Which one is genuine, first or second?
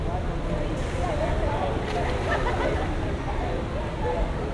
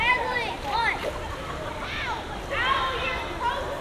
first